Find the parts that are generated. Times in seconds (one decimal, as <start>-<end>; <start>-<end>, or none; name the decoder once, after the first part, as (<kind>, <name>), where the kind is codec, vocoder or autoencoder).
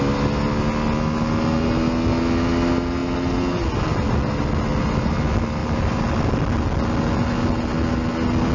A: 5.6-6.4 (vocoder, BigVGAN v2)